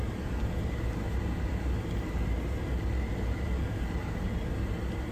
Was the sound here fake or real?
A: real